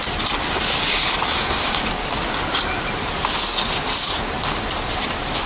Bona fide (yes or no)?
yes